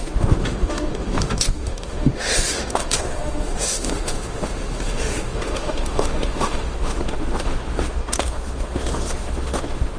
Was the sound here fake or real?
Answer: fake